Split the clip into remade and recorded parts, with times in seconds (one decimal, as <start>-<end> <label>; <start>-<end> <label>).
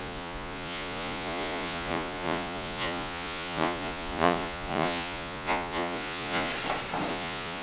0.0-6.5 remade; 6.5-7.1 recorded; 7.1-7.6 remade